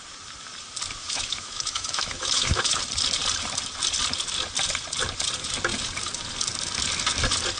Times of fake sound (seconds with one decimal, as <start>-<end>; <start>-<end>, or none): 1.0-2.8

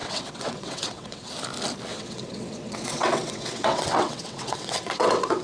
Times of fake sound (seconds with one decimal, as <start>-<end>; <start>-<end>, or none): 0.0-1.3; 1.9-5.4